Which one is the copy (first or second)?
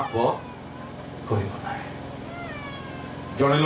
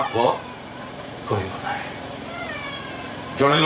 second